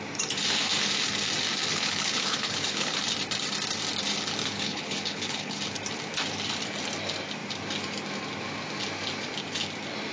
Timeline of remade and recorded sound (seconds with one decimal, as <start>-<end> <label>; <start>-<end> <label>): 0.0-1.7 recorded; 1.7-3.0 remade; 3.0-4.4 recorded; 4.4-5.6 remade; 5.6-10.1 recorded

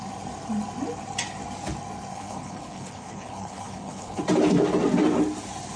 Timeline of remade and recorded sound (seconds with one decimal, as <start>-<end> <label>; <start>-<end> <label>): 0.0-2.1 recorded; 2.1-4.2 remade; 4.2-5.8 recorded

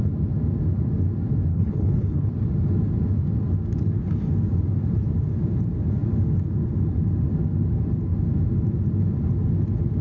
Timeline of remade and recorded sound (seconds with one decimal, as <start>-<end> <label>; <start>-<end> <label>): 0.0-1.5 recorded; 1.5-2.3 remade; 2.3-10.0 recorded

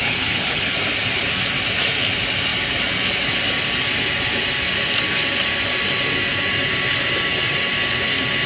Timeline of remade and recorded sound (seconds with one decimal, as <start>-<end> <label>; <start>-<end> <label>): 0.0-0.7 remade; 0.7-8.5 recorded

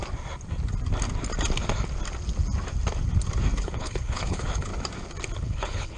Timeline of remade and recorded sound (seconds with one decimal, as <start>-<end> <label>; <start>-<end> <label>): 0.0-3.6 recorded; 3.6-4.7 remade; 4.7-5.4 recorded; 5.4-6.0 remade

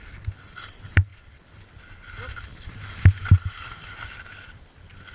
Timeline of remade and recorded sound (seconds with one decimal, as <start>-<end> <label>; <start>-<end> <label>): 0.0-5.1 recorded